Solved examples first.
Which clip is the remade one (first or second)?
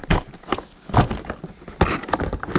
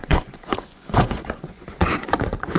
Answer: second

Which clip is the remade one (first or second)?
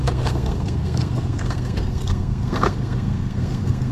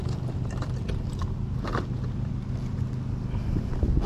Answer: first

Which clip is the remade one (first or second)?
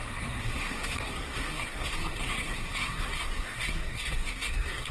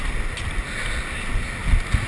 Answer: first